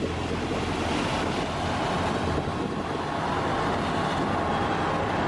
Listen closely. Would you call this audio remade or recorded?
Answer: recorded